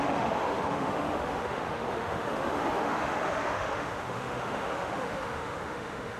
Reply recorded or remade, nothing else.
remade